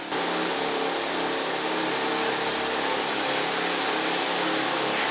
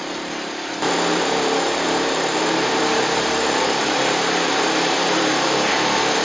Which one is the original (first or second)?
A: first